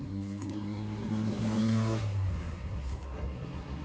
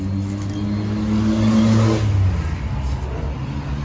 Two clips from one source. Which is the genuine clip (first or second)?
second